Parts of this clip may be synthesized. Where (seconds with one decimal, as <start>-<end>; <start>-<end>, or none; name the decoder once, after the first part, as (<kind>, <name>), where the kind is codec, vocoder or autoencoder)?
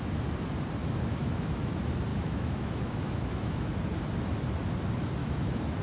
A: 0.8-1.6 (autoencoder, DAC-VAE); 2.1-3.7; 5.2-5.8